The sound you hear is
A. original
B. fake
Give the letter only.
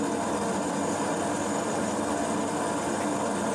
A